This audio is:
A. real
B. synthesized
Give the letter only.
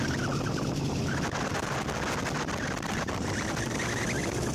A